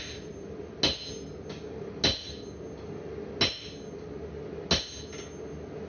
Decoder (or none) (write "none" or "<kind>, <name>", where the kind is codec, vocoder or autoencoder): none